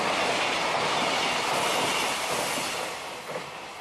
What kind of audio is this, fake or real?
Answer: real